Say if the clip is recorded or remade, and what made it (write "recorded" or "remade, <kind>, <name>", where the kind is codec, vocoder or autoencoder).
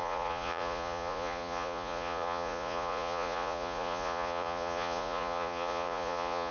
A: remade, vocoder, Vocos